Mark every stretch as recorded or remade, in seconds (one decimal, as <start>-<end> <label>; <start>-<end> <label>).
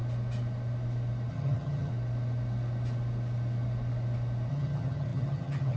0.0-1.3 recorded; 1.3-1.9 remade; 1.9-4.5 recorded; 4.5-5.8 remade